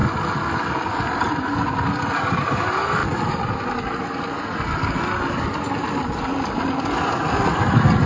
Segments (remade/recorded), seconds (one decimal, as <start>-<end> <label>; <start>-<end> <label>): 0.0-6.3 recorded; 6.3-7.0 remade; 7.0-8.1 recorded